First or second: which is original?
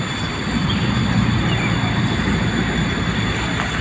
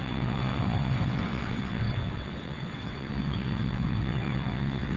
first